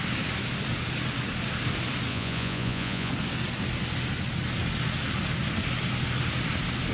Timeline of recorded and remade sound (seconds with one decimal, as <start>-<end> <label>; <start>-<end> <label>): 0.0-2.1 recorded; 2.1-3.1 remade; 3.1-6.9 recorded